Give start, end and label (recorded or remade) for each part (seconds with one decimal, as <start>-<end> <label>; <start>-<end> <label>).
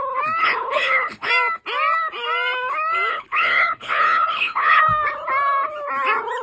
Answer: 0.0-0.4 recorded; 0.4-1.3 remade; 1.3-3.1 recorded; 3.1-4.8 remade; 4.8-6.4 recorded